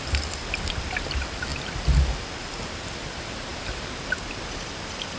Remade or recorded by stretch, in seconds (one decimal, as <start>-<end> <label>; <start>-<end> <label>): 0.0-5.2 recorded